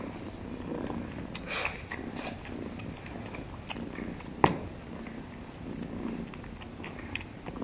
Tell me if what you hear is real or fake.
real